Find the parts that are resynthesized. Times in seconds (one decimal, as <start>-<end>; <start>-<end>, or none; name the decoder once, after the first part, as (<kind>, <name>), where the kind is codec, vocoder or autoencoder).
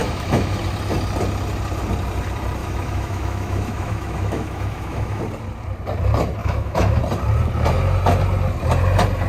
0.0-0.6 (autoencoder, DAC-VAE); 2.6-5.2; 6.4-7.0